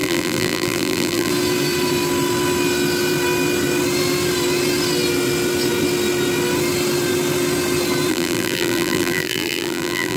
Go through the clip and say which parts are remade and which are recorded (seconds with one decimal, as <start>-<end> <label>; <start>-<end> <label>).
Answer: 0.0-1.3 remade; 1.3-8.1 recorded; 8.1-10.2 remade